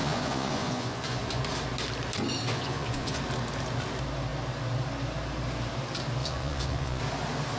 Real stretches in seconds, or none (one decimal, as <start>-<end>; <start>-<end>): 1.4-2.5; 3.2-6.2; 7.0-7.6